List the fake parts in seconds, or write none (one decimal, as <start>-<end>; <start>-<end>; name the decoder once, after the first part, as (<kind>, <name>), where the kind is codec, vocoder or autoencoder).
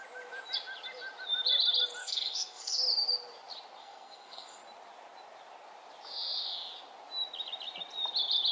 2.0-2.8 (codec, SNAC); 3.8-4.6